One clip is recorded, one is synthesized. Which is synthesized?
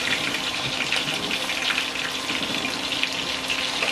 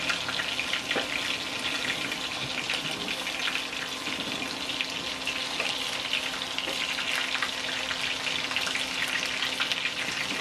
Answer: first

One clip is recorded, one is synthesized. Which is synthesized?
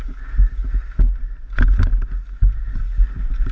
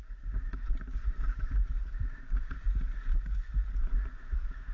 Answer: second